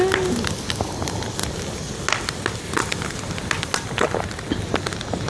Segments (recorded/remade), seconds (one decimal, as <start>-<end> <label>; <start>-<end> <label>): 0.0-5.3 recorded